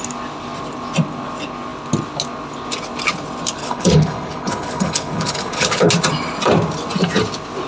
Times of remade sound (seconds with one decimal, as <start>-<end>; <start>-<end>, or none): 3.6-5.9